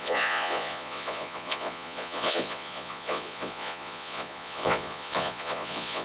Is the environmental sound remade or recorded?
remade